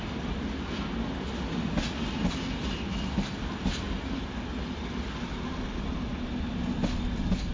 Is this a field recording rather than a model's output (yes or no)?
yes